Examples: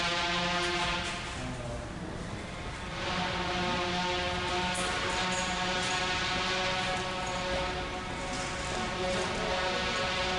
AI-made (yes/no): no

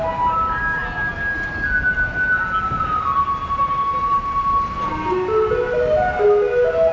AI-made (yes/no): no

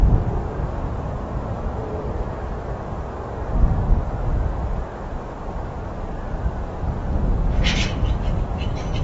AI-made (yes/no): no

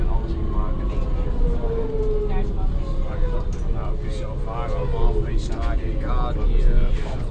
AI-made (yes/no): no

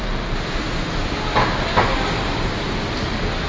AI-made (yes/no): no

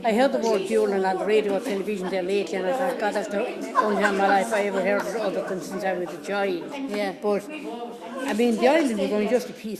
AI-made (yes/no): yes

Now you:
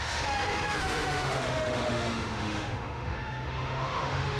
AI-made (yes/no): yes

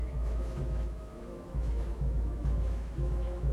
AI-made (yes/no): yes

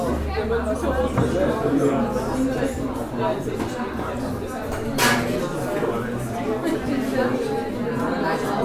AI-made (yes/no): no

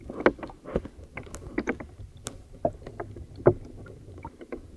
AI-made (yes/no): no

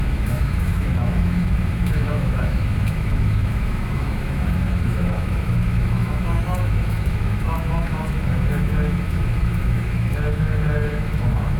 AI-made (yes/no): yes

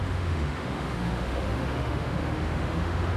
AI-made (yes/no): yes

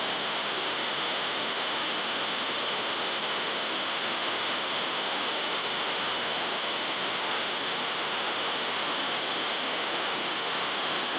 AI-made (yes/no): yes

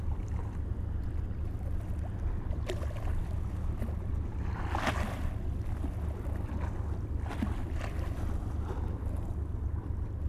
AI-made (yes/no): no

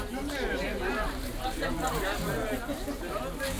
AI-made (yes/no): no